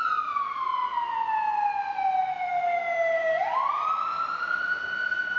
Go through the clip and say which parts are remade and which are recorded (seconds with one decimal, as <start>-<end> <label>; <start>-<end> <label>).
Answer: 0.0-5.4 recorded